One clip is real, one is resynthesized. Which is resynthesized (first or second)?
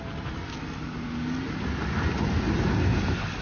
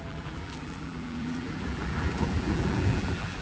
second